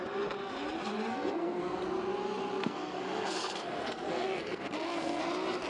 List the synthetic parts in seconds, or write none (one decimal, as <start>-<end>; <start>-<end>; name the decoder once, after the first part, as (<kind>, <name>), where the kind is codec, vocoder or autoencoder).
1.1-1.8 (codec, SNAC); 2.6-5.2